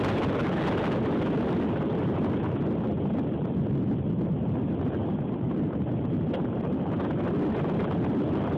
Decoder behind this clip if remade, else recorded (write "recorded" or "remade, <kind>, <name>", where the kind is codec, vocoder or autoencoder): recorded